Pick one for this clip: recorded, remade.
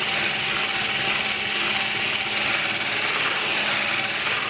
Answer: recorded